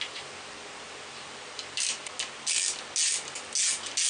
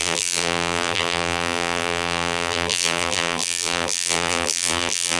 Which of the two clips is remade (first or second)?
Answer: second